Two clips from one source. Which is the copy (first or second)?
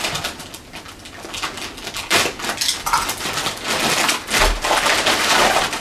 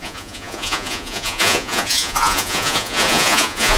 second